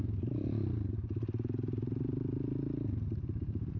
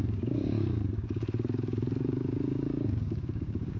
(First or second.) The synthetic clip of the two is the second